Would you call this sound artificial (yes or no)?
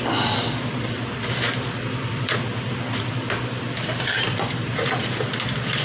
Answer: yes